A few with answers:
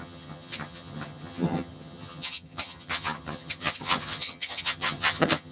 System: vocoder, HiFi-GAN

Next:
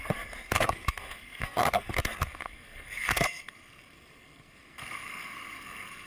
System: codec, SNAC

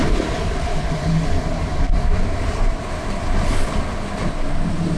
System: none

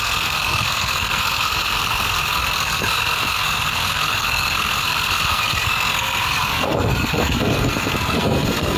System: codec, SNAC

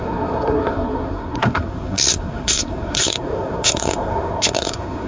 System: codec, SNAC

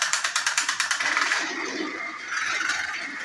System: vocoder, BigVGAN v2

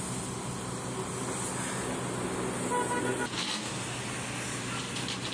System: none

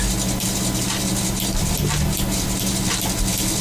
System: none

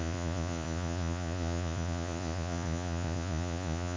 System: vocoder, Vocos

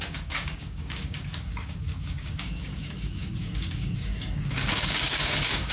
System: codec, DAC